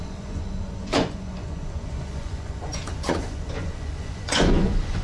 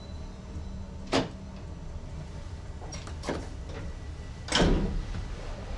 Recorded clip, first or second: second